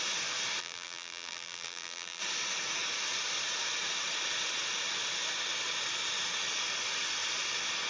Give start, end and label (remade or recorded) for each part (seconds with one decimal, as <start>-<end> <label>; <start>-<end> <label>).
0.0-0.6 recorded; 0.6-2.2 remade; 2.2-7.9 recorded